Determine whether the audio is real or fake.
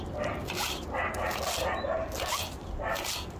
real